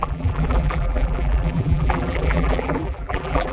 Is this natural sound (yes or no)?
no